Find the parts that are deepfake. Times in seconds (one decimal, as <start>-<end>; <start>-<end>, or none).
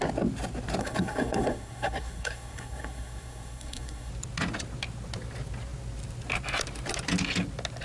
0.8-4.1